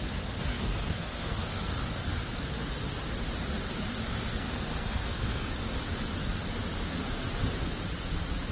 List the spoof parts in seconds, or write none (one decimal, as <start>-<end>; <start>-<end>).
0.5-1.7; 4.3-5.5